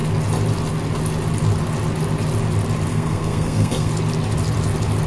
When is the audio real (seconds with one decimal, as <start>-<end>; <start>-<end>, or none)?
0.0-2.9; 3.9-5.1